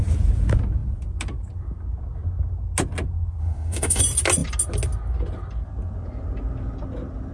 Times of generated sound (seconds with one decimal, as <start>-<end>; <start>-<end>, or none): 3.4-4.0